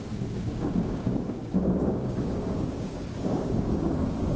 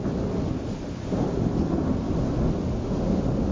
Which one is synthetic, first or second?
first